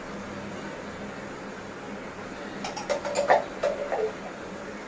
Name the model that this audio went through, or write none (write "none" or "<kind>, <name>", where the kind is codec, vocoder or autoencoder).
none